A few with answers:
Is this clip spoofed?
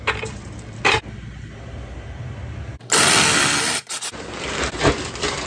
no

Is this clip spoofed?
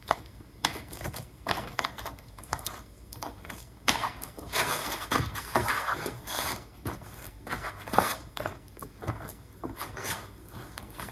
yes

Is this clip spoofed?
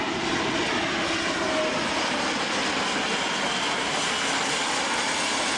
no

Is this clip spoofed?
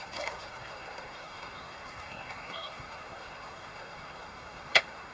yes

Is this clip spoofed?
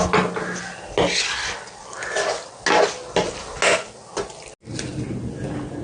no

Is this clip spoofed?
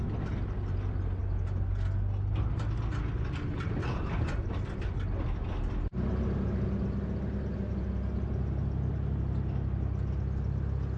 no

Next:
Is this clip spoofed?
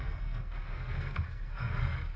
yes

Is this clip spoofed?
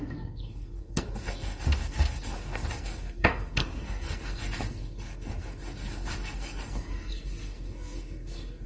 yes